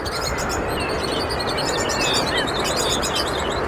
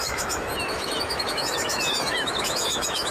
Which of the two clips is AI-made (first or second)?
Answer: second